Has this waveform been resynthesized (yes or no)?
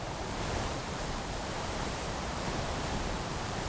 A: yes